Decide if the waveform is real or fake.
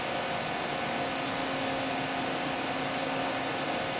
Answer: real